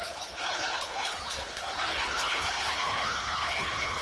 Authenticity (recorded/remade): remade